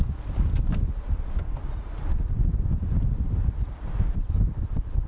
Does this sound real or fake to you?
real